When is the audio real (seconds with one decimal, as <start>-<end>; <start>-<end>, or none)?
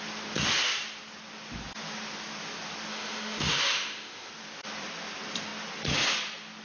0.0-2.9; 4.3-6.6